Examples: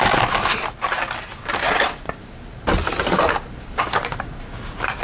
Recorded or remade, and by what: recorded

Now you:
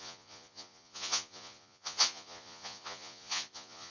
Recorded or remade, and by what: remade, vocoder, Vocos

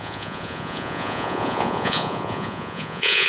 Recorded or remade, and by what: remade, vocoder, Vocos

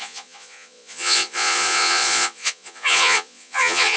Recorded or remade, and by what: remade, vocoder, Vocos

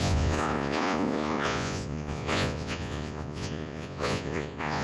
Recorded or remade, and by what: remade, vocoder, Vocos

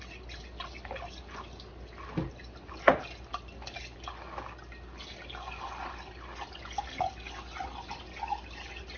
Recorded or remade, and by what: recorded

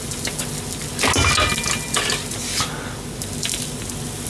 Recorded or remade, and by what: recorded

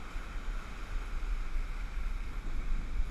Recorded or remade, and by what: recorded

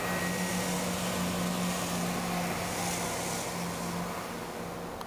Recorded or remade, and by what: recorded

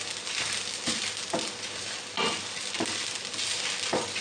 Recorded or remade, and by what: recorded